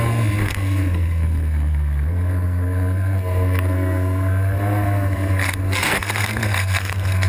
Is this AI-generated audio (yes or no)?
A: yes